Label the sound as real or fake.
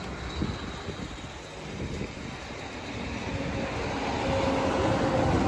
real